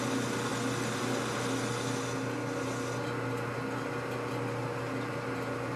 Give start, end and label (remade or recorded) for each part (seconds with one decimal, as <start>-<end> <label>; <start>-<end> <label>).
0.0-5.8 recorded